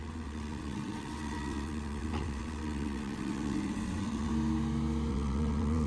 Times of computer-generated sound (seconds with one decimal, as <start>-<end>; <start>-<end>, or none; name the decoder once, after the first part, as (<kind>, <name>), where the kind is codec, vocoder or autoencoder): 0.0-4.3 (vocoder, WaveNeXt); 5.1-5.9